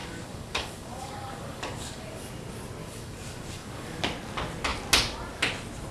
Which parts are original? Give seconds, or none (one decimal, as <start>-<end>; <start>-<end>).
2.2-2.8; 4.0-5.9